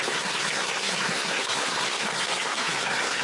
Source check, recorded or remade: remade